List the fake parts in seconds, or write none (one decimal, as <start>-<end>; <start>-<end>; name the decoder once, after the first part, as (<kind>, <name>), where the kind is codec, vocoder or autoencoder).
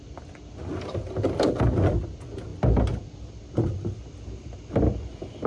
none